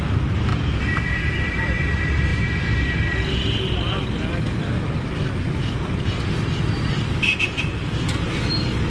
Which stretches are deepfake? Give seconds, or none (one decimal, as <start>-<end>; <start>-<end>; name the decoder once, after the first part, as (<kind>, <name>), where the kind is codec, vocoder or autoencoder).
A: 0.0-0.5 (vocoder, BigVGAN v2); 1.1-2.3; 6.6-8.9

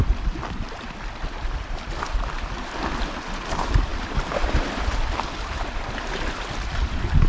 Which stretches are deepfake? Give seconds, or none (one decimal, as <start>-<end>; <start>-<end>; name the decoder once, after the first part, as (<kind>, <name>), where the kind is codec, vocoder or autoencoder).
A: 0.0-7.3 (vocoder, BigVGAN v2)

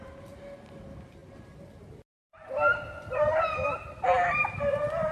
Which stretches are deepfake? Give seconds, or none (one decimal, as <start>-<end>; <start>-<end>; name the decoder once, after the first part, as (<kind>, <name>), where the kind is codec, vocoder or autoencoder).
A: none

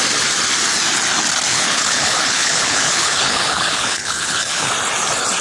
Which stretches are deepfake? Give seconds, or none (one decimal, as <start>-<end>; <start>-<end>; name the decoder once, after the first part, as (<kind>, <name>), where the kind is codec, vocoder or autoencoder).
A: 1.5-4.7 (codec, HILCodec)

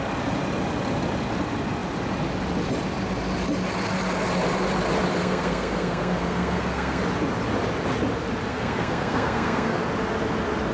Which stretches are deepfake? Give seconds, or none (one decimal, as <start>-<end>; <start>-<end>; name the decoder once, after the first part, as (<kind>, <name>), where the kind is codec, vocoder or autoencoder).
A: 5.2-7.0 (codec, SNAC); 8.5-9.8

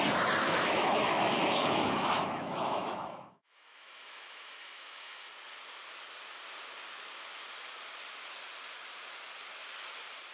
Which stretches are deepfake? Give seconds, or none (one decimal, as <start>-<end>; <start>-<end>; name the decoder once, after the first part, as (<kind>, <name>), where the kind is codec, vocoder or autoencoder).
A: 0.4-5.3 (autoencoder, DAC-VAE)

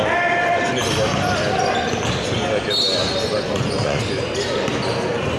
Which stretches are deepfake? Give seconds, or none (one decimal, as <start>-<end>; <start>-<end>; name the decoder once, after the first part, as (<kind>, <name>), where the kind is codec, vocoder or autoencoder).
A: 3.0-4.0 (vocoder, Vocos)

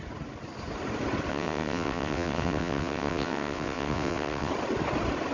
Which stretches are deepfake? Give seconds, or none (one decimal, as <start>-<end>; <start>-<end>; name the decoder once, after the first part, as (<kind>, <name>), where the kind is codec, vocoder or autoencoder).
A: 1.3-4.5 (vocoder, WaveNeXt)